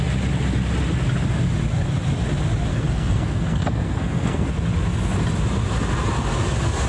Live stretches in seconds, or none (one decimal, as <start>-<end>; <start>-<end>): 0.0-2.7; 4.5-6.9